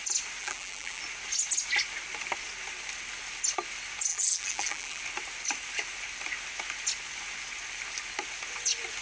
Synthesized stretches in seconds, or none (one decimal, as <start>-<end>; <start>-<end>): 0.4-1.0; 4.1-5.0